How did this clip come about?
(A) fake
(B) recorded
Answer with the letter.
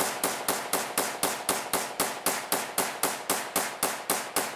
B